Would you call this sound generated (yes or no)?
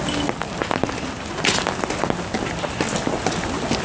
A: no